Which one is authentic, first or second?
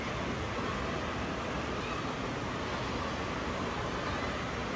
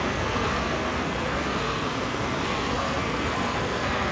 first